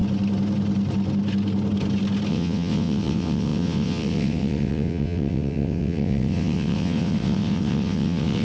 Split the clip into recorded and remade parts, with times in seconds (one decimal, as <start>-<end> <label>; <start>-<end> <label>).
0.0-2.3 recorded; 2.3-8.4 remade